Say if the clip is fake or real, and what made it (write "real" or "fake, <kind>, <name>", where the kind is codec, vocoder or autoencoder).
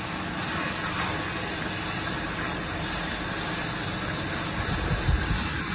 real